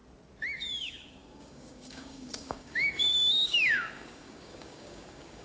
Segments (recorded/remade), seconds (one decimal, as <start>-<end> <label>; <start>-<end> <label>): 0.0-0.6 recorded; 0.6-5.4 remade